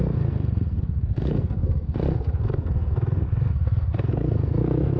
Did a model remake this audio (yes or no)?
yes